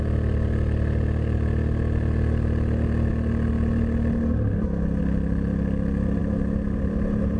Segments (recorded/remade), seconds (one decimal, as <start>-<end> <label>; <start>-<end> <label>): 0.0-6.2 recorded; 6.2-7.4 remade